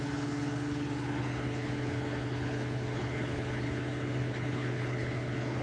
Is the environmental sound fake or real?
fake